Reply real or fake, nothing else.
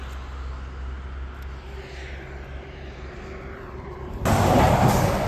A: real